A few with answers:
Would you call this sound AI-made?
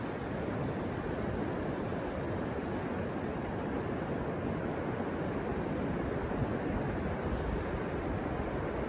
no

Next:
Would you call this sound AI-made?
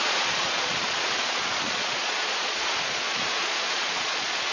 yes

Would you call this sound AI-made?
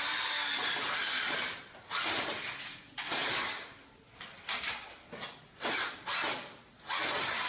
no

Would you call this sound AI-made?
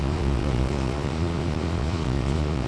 yes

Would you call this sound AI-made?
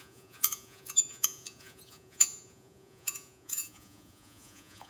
yes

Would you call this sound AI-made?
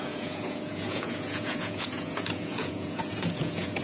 yes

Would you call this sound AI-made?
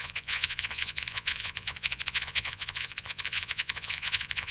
yes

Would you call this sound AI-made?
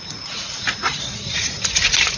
yes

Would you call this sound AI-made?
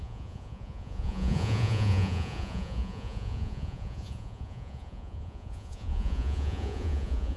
yes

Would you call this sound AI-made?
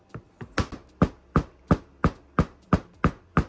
no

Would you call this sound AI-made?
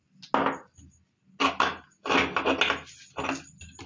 no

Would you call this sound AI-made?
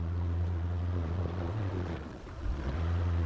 yes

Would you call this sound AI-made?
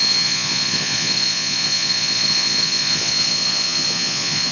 yes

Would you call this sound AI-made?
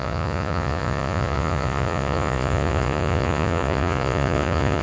yes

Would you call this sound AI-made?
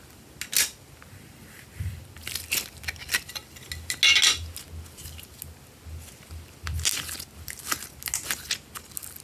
no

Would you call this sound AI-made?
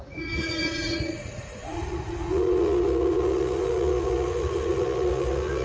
yes